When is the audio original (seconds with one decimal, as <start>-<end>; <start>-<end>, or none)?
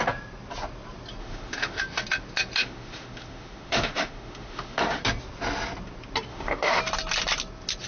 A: 0.0-1.2; 1.8-2.6; 5.0-6.3; 6.8-7.9